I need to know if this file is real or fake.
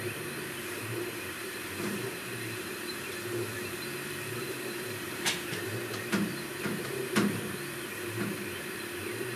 fake